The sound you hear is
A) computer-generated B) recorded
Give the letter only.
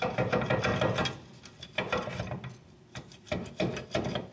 B